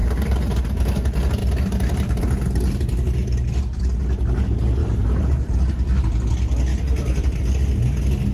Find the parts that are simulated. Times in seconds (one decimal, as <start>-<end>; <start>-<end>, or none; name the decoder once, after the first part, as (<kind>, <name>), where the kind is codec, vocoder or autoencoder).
0.0-0.6 (vocoder, BigVGAN v2); 1.4-2.2; 4.8-5.4; 6.7-7.4